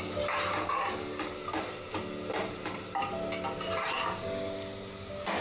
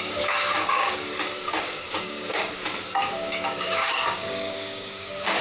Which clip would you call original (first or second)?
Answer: first